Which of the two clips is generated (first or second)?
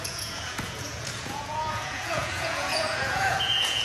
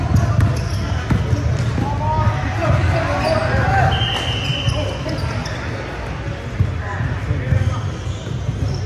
first